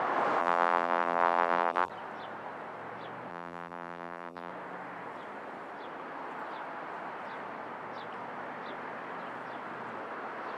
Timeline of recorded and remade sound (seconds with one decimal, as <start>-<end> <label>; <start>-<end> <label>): 0.0-0.4 recorded; 0.4-1.9 remade; 1.9-3.3 recorded; 3.3-4.5 remade; 4.5-10.6 recorded